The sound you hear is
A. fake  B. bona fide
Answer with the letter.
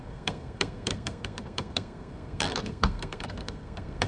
A